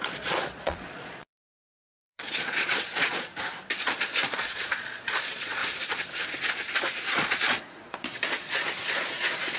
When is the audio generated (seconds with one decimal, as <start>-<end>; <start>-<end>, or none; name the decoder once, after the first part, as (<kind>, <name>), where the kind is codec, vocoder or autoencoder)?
0.0-3.3 (vocoder, Vocos); 3.8-5.6; 7.1-9.6